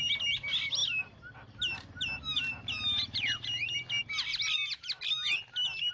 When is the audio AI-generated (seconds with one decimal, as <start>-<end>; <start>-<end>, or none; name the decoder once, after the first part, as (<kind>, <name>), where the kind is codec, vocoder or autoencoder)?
none